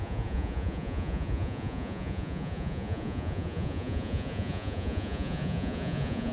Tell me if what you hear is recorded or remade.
remade